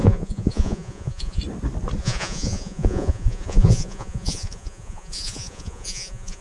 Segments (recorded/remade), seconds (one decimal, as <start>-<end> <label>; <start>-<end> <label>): 0.0-1.4 remade; 1.4-2.0 recorded; 2.0-6.4 remade

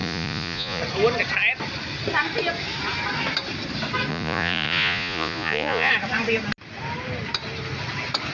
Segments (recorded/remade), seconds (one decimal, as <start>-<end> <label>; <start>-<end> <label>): 0.0-0.8 remade; 0.8-4.1 recorded; 4.1-5.9 remade; 5.9-8.3 recorded

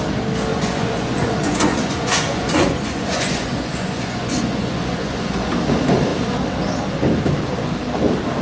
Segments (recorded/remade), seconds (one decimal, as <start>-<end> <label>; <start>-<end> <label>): 0.0-0.5 recorded; 0.5-5.5 remade; 5.5-8.4 recorded